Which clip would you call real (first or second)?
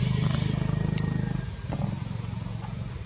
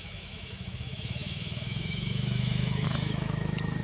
first